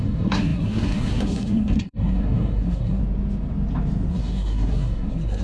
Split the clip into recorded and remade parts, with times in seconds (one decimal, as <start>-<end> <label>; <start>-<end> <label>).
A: 0.0-3.0 remade; 3.0-4.1 recorded; 4.1-5.4 remade